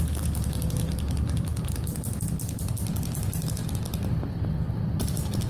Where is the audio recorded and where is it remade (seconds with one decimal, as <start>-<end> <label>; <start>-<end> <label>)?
0.0-3.6 remade; 3.6-4.9 recorded; 4.9-5.5 remade